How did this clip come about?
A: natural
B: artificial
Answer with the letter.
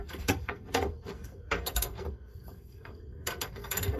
B